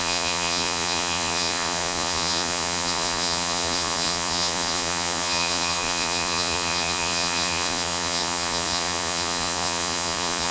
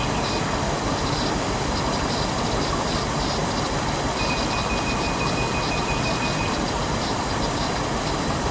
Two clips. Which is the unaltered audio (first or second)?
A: second